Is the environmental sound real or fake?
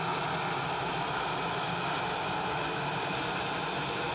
real